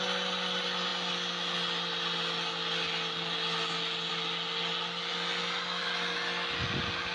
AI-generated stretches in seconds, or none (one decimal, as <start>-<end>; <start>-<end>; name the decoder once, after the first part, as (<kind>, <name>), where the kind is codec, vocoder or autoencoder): none

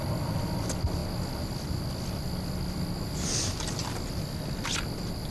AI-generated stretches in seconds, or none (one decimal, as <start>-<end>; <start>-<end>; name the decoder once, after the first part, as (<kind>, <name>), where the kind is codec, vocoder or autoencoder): none

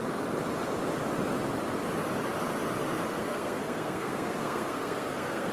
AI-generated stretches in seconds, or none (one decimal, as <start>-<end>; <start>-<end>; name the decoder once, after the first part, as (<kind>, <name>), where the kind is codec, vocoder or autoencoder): 3.1-5.5 (codec, SNAC)

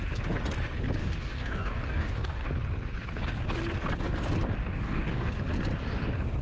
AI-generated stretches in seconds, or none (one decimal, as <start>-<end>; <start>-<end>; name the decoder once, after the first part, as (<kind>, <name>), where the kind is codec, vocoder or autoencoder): 1.0-2.5 (codec, DAC); 4.6-5.3

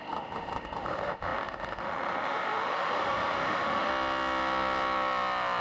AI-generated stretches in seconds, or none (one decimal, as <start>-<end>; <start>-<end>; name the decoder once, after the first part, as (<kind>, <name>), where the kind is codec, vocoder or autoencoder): 0.0-3.9 (autoencoder, DAC-VAE)

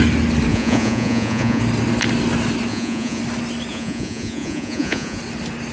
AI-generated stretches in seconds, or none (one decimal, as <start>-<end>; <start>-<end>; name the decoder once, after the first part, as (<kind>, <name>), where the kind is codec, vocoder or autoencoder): 0.5-1.6 (vocoder, Vocos); 2.7-3.2; 3.7-5.2